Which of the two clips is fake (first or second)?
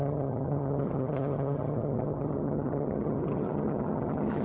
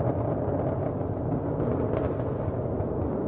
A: first